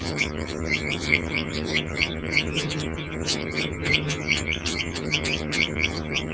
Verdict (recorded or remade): remade